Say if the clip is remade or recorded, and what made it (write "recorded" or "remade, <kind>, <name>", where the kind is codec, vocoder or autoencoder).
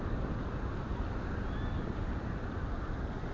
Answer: recorded